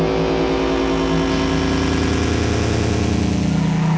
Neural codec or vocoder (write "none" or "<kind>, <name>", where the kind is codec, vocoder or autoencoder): none